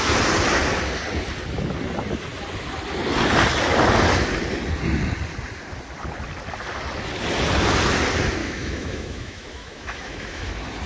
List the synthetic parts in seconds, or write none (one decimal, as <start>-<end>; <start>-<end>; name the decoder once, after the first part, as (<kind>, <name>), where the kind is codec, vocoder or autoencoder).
8.4-10.5 (autoencoder, DAC-VAE)

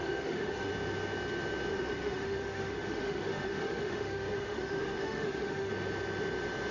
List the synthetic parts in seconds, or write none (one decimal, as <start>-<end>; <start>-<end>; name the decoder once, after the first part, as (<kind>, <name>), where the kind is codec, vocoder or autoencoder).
0.0-0.7 (autoencoder, DAC-VAE); 1.7-5.7

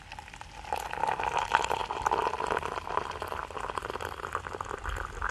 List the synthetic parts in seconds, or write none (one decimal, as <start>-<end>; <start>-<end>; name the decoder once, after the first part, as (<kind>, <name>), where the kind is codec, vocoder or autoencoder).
none

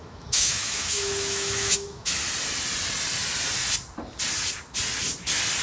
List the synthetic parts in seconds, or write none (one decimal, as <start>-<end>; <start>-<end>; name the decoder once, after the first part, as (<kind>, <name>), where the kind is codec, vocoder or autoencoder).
0.0-2.1 (autoencoder, DAC-VAE)

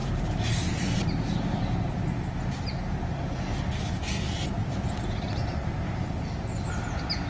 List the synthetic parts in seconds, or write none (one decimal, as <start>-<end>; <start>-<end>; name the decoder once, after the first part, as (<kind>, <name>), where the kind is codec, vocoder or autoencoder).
none

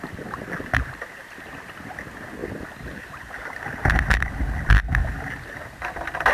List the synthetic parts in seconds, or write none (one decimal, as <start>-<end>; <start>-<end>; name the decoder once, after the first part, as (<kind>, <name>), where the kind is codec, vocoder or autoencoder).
none

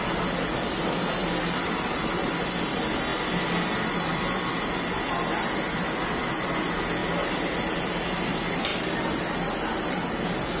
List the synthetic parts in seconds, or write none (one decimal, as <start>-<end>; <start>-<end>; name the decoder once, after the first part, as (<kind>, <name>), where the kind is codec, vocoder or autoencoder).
none